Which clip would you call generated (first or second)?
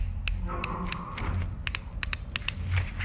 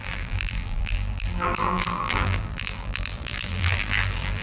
second